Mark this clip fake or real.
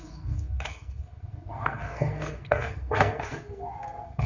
fake